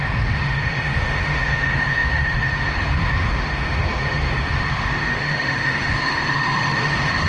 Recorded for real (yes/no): no